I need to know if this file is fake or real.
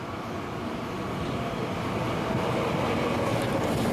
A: real